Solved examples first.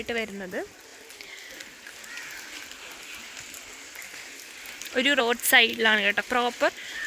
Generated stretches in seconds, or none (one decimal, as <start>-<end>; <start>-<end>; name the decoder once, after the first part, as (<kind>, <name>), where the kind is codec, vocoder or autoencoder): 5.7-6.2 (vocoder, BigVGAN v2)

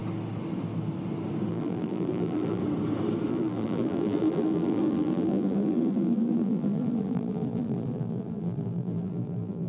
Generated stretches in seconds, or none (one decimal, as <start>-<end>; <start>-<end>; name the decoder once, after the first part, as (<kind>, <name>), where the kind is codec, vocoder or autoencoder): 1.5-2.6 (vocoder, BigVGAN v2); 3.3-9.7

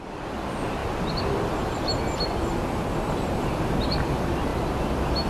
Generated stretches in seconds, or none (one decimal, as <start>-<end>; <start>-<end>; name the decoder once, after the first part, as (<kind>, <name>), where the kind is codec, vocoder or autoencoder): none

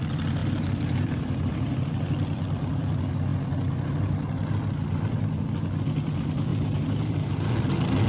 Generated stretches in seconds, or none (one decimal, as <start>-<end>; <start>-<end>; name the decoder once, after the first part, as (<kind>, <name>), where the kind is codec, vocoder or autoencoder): 0.4-2.1 (vocoder, BigVGAN v2); 6.5-7.5

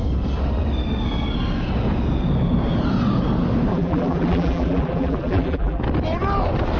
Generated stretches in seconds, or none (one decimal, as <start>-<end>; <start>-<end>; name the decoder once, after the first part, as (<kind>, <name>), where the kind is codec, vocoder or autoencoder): 3.7-5.8 (vocoder, BigVGAN v2)

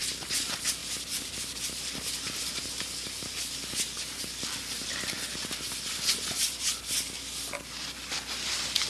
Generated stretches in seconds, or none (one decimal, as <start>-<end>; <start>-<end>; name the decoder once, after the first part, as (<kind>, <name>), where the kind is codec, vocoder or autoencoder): none